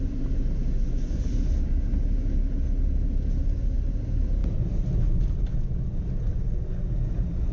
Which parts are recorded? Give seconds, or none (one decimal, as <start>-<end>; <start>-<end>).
0.0-4.4; 4.9-7.5